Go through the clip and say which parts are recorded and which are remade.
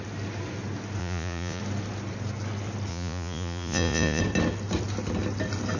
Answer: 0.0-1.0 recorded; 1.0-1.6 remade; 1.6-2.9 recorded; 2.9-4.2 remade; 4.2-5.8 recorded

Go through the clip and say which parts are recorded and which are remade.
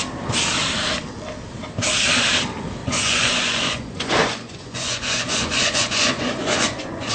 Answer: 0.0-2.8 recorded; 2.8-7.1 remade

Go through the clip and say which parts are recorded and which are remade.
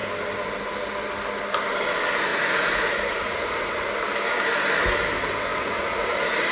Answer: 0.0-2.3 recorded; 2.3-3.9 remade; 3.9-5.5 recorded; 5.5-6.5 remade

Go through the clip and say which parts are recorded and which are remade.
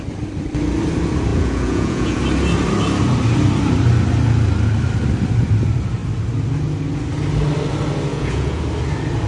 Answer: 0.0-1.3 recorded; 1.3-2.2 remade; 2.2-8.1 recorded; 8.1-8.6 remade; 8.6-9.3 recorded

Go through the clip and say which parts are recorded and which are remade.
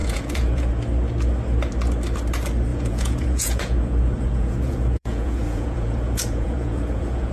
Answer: 0.0-0.7 remade; 0.7-2.7 recorded; 2.7-7.3 remade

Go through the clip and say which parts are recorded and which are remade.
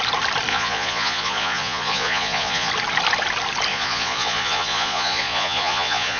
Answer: 0.0-0.5 recorded; 0.5-2.7 remade; 2.7-3.7 recorded; 3.7-6.2 remade